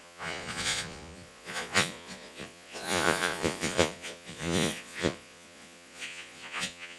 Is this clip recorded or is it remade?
remade